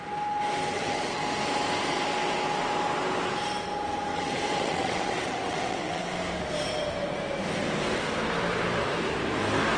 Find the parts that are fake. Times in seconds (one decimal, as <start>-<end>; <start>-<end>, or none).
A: 0.7-1.2; 4.1-6.1